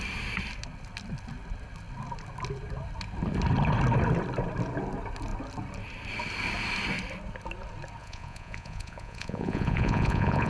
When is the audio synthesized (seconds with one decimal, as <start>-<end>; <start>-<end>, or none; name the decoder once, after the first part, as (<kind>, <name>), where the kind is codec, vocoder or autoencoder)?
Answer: 8.0-10.5 (vocoder, Vocos)